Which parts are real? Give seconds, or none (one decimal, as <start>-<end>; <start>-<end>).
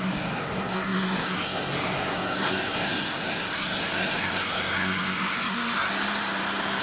5.9-6.8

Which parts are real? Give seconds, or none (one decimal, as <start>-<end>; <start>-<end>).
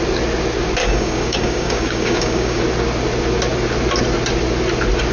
0.0-0.8; 2.6-5.1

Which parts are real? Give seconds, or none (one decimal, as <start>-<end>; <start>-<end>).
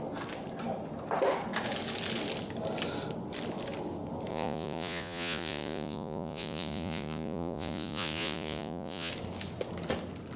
0.0-4.3; 9.1-10.4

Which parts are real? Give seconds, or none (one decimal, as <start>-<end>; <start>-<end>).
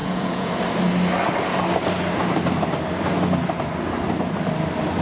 0.5-5.0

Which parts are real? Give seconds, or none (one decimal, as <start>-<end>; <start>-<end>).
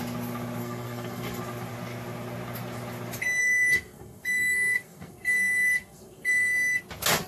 0.0-0.6; 1.4-3.4; 6.8-7.3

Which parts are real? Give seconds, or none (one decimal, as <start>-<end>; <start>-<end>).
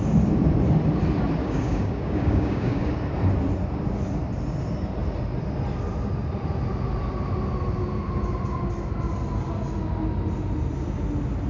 0.0-1.4; 2.8-11.5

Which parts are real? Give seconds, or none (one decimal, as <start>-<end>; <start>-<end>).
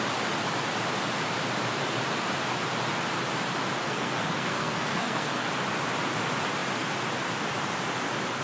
0.0-3.8; 5.5-8.4